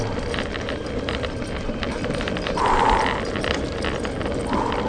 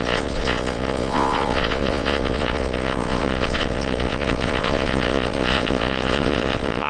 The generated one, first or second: second